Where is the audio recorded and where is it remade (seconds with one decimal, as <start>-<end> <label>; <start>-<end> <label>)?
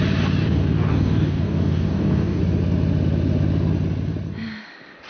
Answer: 0.0-0.4 recorded; 0.4-2.4 remade; 2.4-5.1 recorded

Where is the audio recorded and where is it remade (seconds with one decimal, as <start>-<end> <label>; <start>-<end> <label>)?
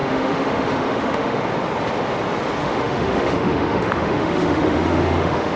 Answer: 0.0-1.4 remade; 1.4-2.6 recorded; 2.6-5.6 remade